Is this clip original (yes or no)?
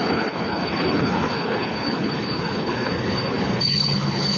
no